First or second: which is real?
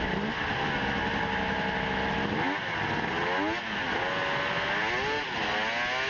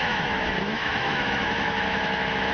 first